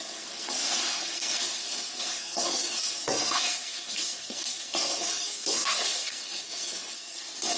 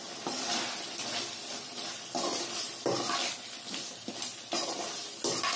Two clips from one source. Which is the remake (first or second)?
first